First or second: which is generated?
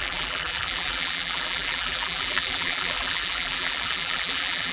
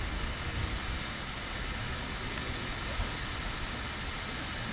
first